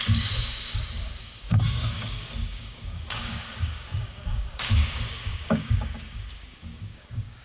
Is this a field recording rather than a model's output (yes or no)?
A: no